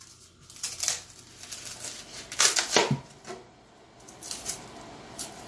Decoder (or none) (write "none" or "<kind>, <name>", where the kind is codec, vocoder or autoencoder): none